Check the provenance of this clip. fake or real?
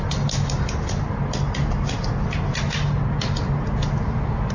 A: real